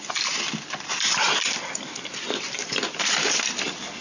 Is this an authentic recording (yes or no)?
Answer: no